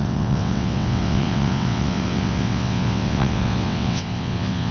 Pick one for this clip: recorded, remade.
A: remade